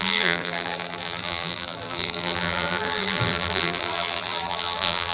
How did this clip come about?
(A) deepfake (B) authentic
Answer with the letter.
A